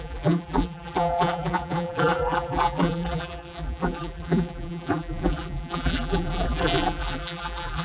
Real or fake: fake